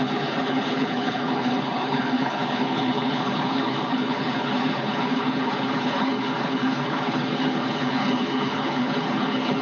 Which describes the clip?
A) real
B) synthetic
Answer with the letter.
B